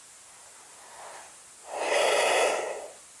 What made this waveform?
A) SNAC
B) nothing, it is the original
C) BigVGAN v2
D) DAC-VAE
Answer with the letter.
B